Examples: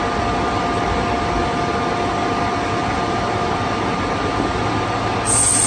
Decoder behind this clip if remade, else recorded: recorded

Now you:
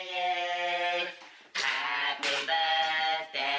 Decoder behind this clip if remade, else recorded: remade, vocoder, BigVGAN v2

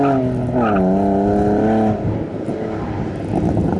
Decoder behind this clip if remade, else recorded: recorded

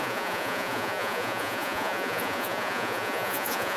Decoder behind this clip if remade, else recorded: remade, vocoder, Vocos